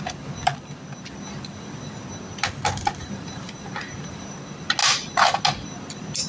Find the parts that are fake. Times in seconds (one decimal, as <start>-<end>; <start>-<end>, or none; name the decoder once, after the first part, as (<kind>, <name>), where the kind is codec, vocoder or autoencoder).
3.0-4.3 (vocoder, BigVGAN v2)